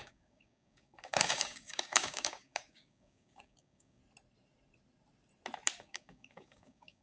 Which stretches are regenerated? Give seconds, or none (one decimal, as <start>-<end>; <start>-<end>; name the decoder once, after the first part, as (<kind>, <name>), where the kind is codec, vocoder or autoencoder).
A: 0.0-4.0 (codec, DAC); 5.8-7.0